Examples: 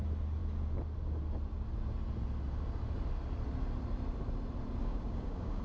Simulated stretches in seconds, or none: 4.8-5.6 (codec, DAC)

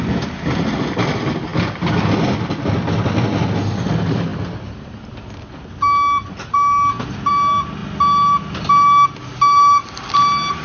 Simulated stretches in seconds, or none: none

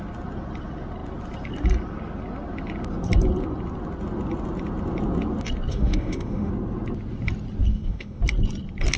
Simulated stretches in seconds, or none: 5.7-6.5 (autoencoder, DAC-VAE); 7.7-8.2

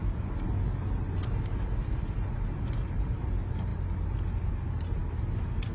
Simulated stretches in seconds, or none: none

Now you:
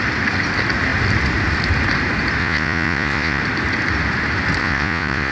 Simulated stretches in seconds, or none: 2.4-3.4 (vocoder, Vocos); 4.6-5.3

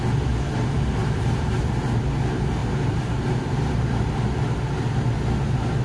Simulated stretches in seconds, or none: 1.0-1.6 (vocoder, BigVGAN v2); 2.6-4.1